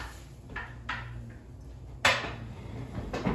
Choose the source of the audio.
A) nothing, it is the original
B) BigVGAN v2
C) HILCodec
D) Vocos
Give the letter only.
A